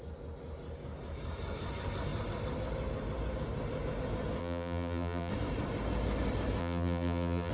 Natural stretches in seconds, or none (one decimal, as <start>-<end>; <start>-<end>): 0.0-4.4; 5.3-6.6